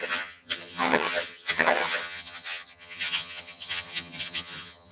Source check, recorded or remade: remade